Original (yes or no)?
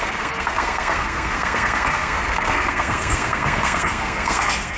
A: no